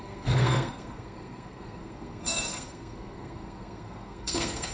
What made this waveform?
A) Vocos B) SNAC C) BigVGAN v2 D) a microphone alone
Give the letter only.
B